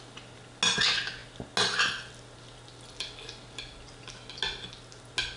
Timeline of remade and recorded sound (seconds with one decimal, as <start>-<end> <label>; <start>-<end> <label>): 0.0-5.4 recorded

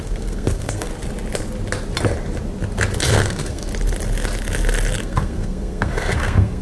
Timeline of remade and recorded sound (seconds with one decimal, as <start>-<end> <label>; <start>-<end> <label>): 0.0-0.9 remade; 0.9-3.1 recorded; 3.1-3.7 remade; 3.7-5.0 recorded; 5.0-6.6 remade

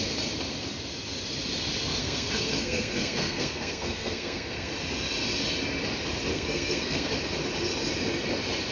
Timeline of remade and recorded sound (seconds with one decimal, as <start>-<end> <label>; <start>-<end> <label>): 0.0-2.0 recorded; 2.0-4.7 remade; 4.7-6.3 recorded; 6.3-7.1 remade; 7.1-8.7 recorded

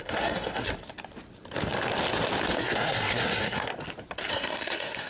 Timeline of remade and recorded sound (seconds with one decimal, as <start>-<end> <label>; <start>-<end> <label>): 0.0-0.7 remade; 0.7-2.6 recorded; 2.6-3.7 remade; 3.7-4.3 recorded; 4.3-5.1 remade

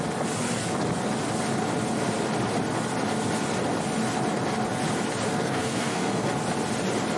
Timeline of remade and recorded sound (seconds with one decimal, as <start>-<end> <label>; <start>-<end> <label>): 0.0-5.3 recorded; 5.3-6.3 remade; 6.3-7.2 recorded

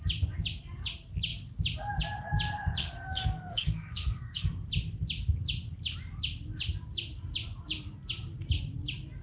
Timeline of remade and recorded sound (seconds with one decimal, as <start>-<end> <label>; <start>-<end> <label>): 0.0-2.8 recorded; 2.8-4.5 remade; 4.5-9.2 recorded

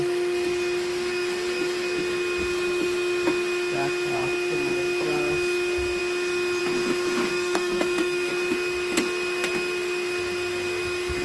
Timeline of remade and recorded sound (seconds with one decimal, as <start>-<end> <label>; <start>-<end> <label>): 0.0-7.3 recorded; 7.3-8.3 remade; 8.3-11.2 recorded